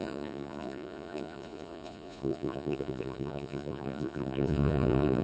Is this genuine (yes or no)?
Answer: no